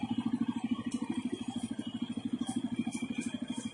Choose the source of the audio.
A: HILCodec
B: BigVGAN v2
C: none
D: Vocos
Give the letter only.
C